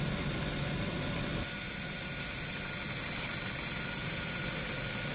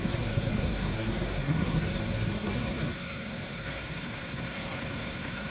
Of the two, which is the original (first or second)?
first